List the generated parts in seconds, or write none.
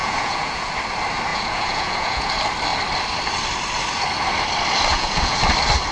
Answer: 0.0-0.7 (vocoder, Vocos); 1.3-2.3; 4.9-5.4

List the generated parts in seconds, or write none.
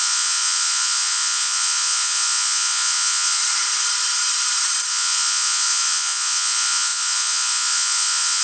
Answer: 0.0-3.4 (vocoder, Vocos); 4.9-8.4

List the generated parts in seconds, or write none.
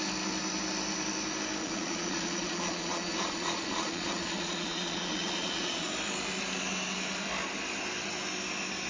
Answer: 1.6-5.9 (vocoder, Vocos)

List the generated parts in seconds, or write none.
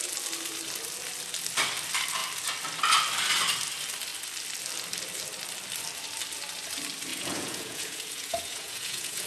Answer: 7.1-9.3 (vocoder, Vocos)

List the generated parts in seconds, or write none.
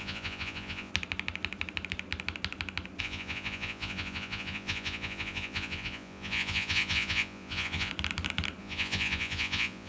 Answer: 0.0-0.9 (vocoder, Vocos); 3.0-7.9; 8.6-9.9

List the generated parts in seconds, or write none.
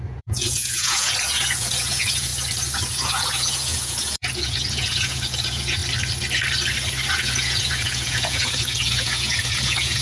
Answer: 0.0-2.3 (vocoder, Vocos); 2.9-5.8; 7.1-10.0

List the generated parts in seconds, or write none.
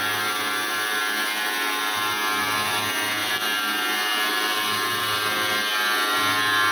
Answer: none